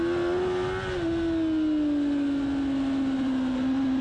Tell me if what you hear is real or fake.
real